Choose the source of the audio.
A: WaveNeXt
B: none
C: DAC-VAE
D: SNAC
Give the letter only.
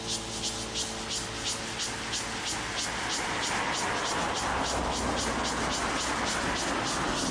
B